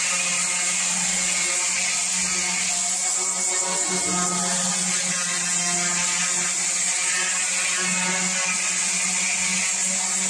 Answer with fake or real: real